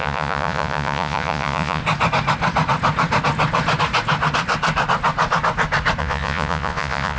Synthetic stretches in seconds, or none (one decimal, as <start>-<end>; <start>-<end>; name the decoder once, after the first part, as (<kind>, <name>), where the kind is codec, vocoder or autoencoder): 0.0-1.8 (vocoder, Vocos); 6.0-7.2